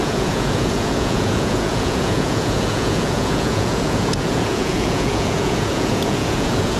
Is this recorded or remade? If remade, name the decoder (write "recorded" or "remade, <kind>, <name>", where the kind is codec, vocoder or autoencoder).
remade, vocoder, Vocos